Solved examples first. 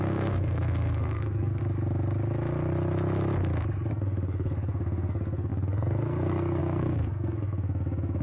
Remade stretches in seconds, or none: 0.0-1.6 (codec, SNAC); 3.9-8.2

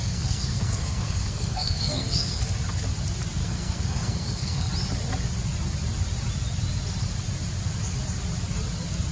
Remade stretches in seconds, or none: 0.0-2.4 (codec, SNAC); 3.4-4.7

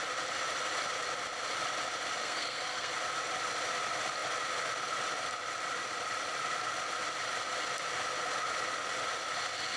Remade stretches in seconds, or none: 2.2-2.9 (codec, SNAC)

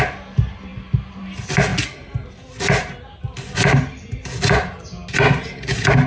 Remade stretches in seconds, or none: none